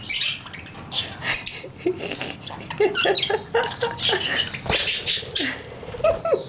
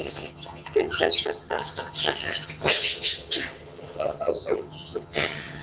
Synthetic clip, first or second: second